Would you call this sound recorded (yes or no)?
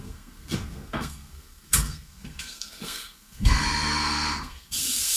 no